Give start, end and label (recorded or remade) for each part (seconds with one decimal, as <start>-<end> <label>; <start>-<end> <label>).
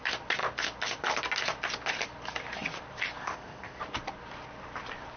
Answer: 0.0-3.2 recorded; 3.2-3.8 remade; 3.8-5.2 recorded